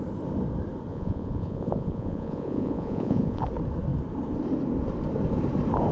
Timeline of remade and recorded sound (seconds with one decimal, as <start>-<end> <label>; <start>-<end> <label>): 0.0-0.9 recorded; 0.9-3.4 remade; 3.4-5.9 recorded